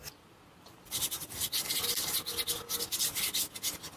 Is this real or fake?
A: real